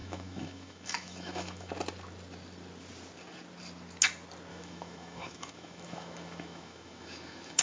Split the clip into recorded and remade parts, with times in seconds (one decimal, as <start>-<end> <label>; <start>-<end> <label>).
0.0-1.7 remade; 1.7-4.5 recorded; 4.5-7.6 remade